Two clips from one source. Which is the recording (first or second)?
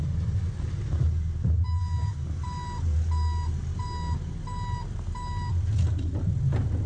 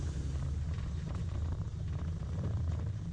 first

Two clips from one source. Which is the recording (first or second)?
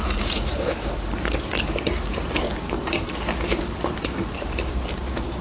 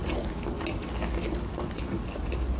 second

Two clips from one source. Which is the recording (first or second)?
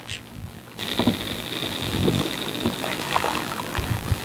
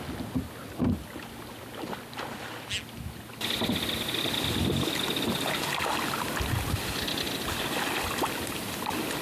second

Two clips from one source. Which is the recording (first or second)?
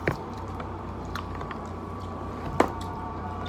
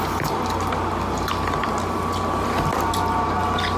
second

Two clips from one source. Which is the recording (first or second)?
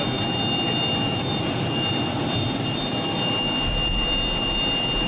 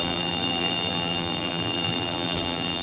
first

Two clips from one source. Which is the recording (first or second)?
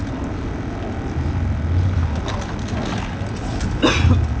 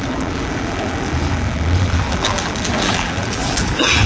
first